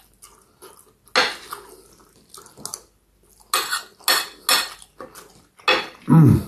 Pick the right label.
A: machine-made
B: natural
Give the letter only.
B